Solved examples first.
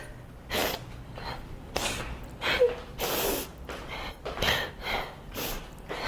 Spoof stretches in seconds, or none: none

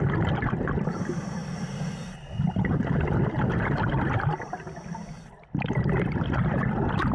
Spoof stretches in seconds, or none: 2.0-5.2 (vocoder, BigVGAN v2)

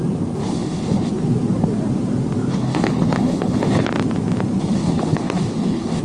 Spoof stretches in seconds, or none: 0.4-1.1 (codec, HILCodec); 2.5-3.9; 4.6-6.0

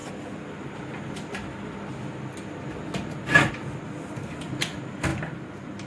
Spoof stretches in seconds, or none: none

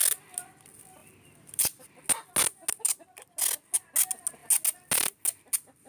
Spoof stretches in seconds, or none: none

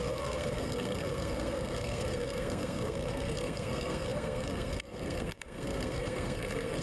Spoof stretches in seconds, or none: 0.0-6.8 (codec, SNAC)

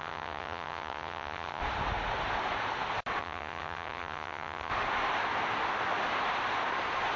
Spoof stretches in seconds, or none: 0.0-1.6 (vocoder, HiFi-GAN); 3.2-4.7